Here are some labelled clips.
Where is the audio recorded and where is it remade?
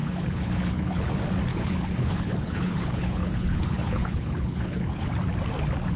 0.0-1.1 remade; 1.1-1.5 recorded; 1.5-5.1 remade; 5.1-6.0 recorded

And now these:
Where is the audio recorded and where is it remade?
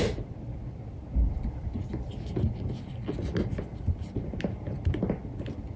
0.0-5.8 recorded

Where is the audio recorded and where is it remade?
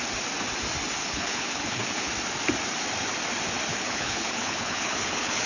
0.0-1.0 recorded; 1.0-2.1 remade; 2.1-3.7 recorded; 3.7-5.5 remade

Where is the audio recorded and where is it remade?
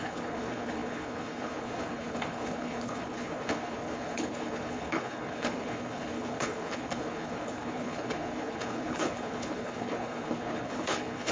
0.0-11.3 remade